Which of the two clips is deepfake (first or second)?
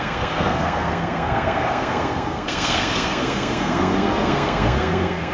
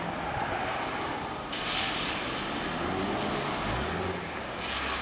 first